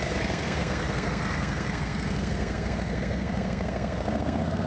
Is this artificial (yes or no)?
yes